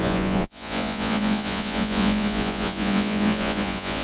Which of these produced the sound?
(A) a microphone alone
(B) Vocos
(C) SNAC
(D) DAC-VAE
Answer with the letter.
B